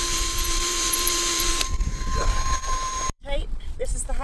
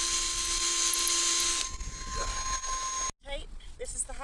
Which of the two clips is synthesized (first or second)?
first